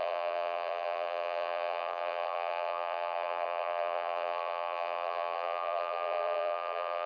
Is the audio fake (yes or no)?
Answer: yes